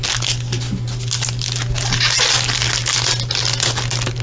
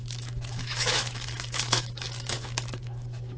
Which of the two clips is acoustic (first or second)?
first